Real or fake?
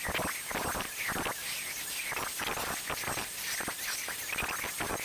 real